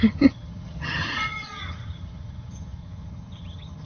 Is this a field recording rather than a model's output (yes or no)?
no